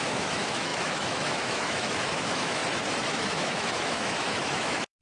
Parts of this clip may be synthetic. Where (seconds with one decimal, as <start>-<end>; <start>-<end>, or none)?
0.0-2.6; 3.1-5.0